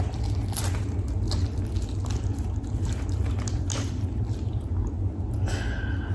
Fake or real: real